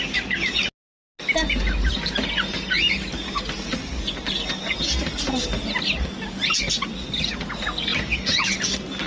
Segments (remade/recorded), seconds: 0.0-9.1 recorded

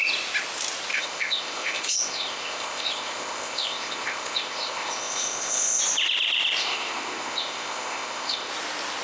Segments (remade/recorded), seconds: 0.0-0.9 recorded; 0.9-5.8 remade; 5.8-6.6 recorded; 6.6-8.5 remade; 8.5-9.0 recorded

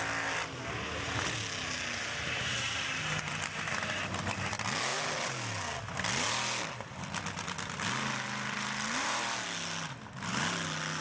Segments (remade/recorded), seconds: 0.0-11.0 recorded

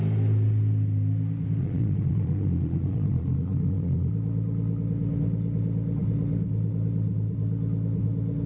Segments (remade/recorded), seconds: 0.0-1.6 recorded; 1.6-4.1 remade; 4.1-8.5 recorded

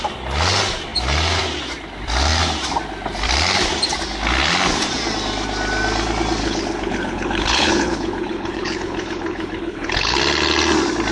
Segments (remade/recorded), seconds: 0.0-6.4 recorded; 6.4-10.2 remade; 10.2-11.1 recorded